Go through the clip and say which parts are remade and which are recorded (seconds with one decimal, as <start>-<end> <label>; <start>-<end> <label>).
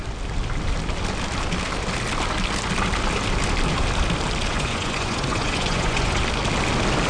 0.0-4.5 recorded; 4.5-6.2 remade; 6.2-7.1 recorded